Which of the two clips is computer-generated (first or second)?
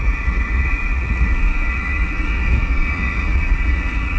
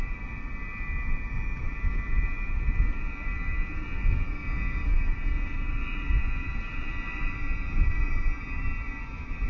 first